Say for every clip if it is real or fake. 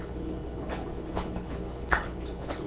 fake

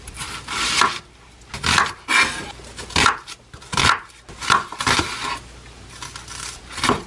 real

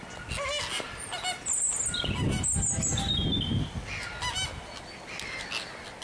real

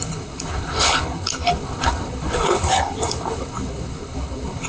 fake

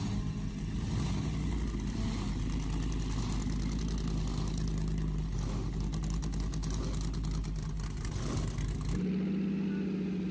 real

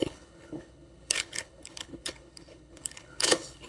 fake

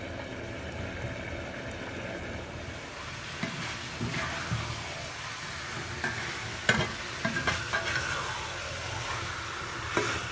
real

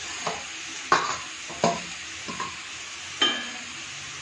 real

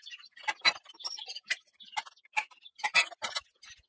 real